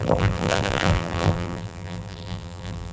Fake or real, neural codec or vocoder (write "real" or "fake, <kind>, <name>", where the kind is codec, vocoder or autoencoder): fake, vocoder, BigVGAN v2